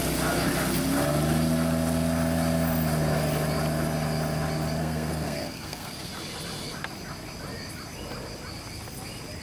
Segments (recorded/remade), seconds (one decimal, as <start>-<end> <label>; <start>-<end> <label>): 0.0-4.8 recorded; 4.8-6.1 remade; 6.1-9.4 recorded